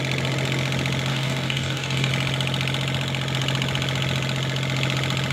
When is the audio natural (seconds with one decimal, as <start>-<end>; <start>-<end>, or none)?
0.0-1.1; 2.1-5.3